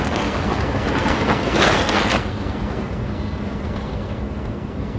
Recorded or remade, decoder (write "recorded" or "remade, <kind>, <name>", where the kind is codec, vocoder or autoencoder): remade, codec, SNAC